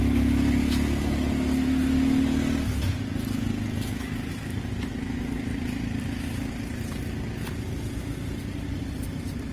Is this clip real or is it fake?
real